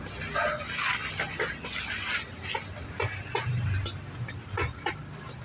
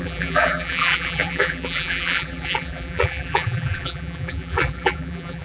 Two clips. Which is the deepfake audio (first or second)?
second